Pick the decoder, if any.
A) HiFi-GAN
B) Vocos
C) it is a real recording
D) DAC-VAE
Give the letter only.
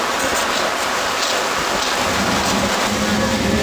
C